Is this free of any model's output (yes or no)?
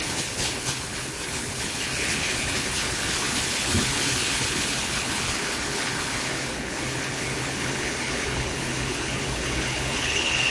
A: no